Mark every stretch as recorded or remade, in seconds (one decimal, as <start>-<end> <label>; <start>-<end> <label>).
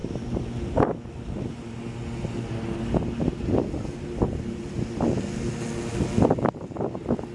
0.0-1.0 remade; 1.0-7.3 recorded